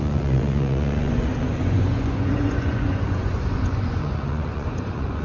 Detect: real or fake fake